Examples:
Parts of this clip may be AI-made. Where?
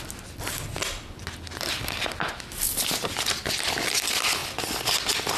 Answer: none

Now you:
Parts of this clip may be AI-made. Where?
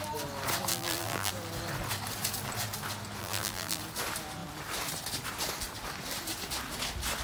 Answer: 0.7-1.3 (vocoder, BigVGAN v2); 3.2-3.8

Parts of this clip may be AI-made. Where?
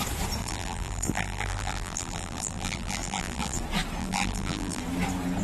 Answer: 0.4-3.6 (vocoder, BigVGAN v2); 4.0-4.8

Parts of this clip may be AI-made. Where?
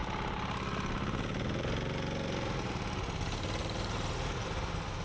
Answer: 3.6-4.4 (vocoder, BigVGAN v2)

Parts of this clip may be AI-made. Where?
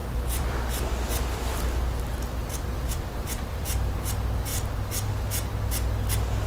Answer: 0.0-3.9 (vocoder, BigVGAN v2)